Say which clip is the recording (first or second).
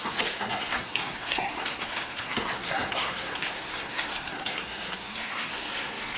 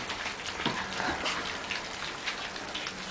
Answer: second